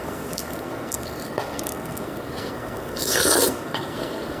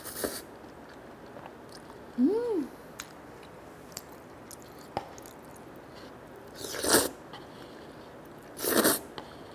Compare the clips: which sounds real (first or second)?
second